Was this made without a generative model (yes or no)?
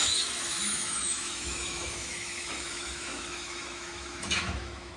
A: no